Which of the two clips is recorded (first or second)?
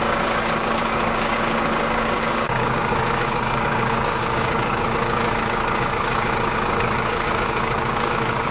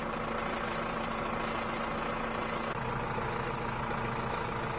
second